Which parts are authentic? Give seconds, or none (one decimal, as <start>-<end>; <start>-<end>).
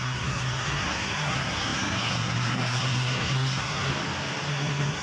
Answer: 3.9-4.5